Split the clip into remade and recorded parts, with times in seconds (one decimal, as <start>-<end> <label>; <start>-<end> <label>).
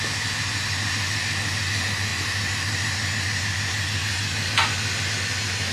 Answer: 0.0-5.7 recorded